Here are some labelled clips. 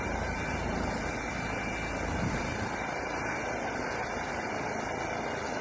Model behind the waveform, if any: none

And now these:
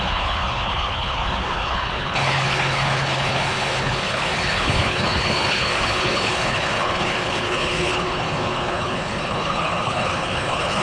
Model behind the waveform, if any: codec, HILCodec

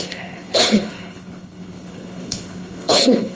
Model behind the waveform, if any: codec, HILCodec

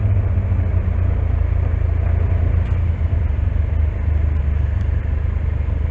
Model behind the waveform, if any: none